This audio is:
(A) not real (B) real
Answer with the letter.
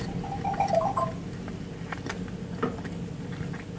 B